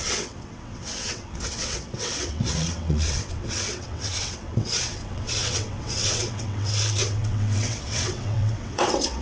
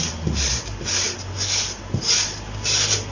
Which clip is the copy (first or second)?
first